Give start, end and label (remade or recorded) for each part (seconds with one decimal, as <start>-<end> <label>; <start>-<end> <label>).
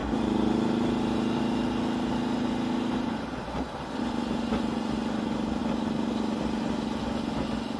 0.0-7.8 recorded